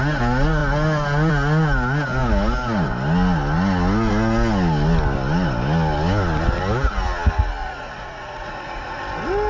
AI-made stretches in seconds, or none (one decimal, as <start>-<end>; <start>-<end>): 7.6-9.0